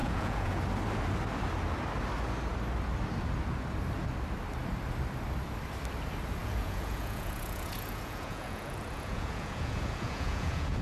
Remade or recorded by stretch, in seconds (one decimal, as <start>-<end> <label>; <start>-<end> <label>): 0.0-0.6 remade; 0.6-6.4 recorded; 6.4-10.8 remade